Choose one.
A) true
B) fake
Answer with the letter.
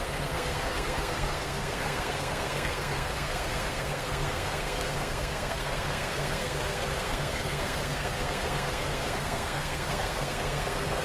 B